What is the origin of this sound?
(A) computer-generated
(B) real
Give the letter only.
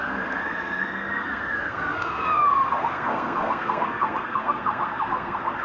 A